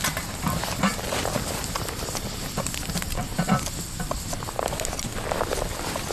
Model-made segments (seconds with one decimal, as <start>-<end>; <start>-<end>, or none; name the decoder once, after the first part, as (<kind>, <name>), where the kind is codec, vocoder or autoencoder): 0.9-1.6 (vocoder, BigVGAN v2)